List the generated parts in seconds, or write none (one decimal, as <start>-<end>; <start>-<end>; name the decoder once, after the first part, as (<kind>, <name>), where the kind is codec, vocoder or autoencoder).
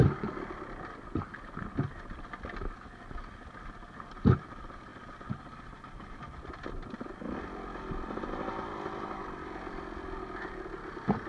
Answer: none